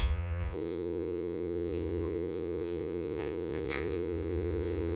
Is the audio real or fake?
fake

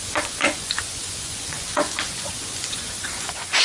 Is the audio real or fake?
fake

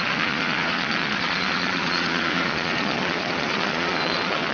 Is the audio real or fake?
fake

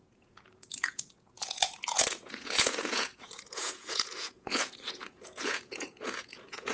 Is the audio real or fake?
fake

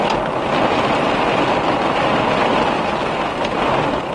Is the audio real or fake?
real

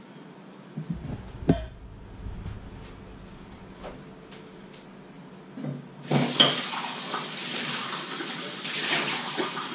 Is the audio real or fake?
real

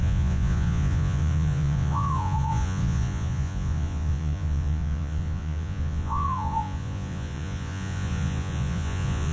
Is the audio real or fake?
fake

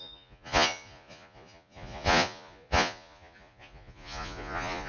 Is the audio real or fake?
fake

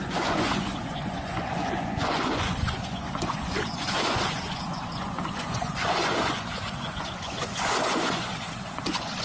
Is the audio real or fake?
fake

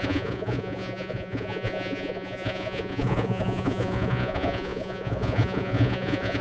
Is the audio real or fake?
fake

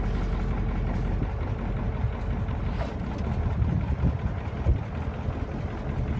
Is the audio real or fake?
real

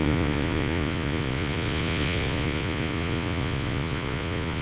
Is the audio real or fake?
fake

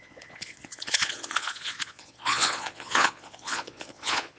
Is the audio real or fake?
fake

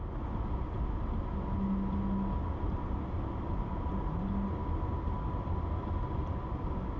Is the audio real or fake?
real